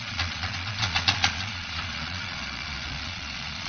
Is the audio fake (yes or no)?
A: yes